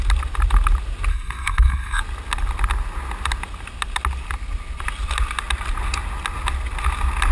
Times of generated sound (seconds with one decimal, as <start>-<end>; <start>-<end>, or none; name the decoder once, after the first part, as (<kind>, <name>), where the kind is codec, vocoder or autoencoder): 1.1-2.0 (codec, SNAC)